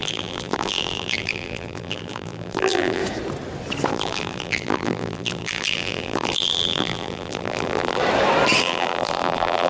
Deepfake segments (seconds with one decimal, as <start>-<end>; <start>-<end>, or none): 0.0-3.0; 3.9-8.0; 8.6-9.7